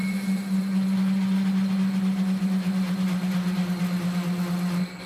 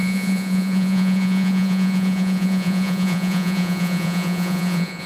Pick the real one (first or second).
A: first